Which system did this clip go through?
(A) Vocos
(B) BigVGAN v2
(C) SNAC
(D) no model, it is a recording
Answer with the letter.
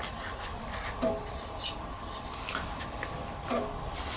D